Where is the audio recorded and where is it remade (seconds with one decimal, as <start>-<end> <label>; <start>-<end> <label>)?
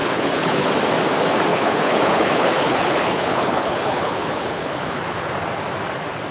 0.0-0.7 remade; 0.7-1.5 recorded; 1.5-5.3 remade; 5.3-6.3 recorded